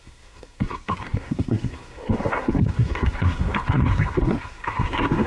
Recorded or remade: remade